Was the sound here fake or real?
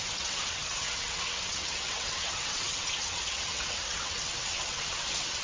fake